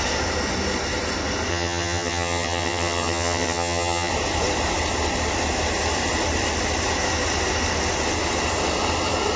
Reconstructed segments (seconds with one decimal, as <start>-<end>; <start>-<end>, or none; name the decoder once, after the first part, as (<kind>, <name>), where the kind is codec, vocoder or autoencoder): 1.5-4.1 (vocoder, HiFi-GAN)